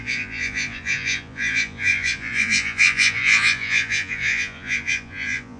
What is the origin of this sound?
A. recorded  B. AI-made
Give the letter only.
B